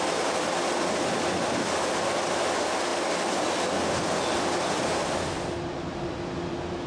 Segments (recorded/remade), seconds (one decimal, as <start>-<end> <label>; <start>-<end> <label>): 0.0-6.9 recorded